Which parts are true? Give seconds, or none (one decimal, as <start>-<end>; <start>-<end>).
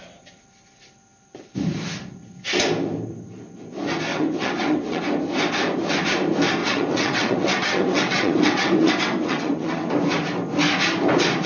0.0-4.1; 5.0-6.6; 9.9-11.5